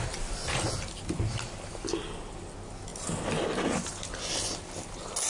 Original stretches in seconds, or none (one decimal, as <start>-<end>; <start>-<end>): 0.0-5.3